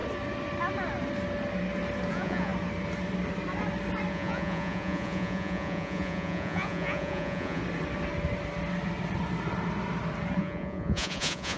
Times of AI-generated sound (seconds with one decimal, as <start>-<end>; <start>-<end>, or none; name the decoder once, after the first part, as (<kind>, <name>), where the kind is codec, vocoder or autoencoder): 2.1-2.5 (vocoder, Vocos); 4.1-7.6; 10.4-11.6